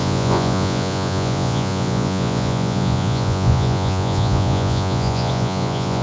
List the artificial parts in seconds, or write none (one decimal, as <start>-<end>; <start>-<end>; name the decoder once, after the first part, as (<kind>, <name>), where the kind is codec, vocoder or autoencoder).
0.0-6.0 (vocoder, Vocos)

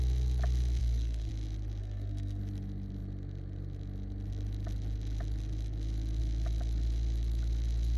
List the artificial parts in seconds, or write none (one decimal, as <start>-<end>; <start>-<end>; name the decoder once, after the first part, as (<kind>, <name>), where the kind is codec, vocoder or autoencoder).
0.8-1.3 (codec, SNAC); 1.8-2.4

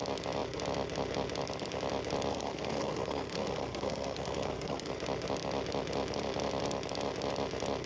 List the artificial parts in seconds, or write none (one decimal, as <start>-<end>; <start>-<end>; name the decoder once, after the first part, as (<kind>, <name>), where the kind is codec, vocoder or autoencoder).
2.3-4.9 (codec, SNAC)